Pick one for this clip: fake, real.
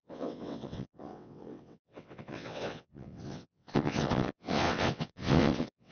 fake